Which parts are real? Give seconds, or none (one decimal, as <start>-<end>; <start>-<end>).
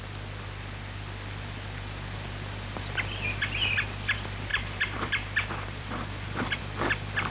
0.0-4.5; 6.6-7.3